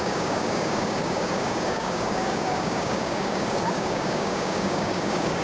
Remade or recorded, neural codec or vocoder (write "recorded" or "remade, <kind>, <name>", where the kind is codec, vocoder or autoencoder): remade, codec, DAC